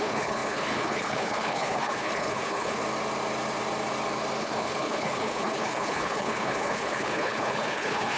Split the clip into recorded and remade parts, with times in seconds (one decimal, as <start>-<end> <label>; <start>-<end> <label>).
0.0-2.8 remade; 2.8-4.4 recorded; 4.4-8.2 remade